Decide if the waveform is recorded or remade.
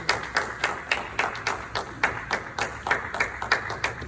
recorded